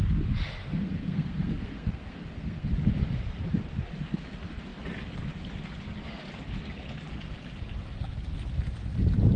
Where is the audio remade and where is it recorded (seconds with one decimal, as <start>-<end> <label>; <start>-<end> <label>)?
0.0-0.6 recorded; 0.6-2.7 remade; 2.7-9.4 recorded